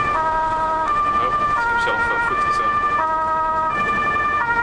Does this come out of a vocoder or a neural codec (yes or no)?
no